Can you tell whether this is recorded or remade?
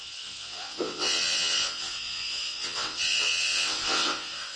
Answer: remade